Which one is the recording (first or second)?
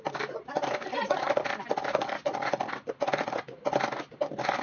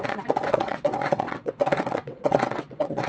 first